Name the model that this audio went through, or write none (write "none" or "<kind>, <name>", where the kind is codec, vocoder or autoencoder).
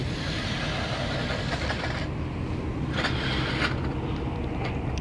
none